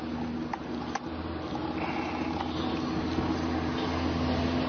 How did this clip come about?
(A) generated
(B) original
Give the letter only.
B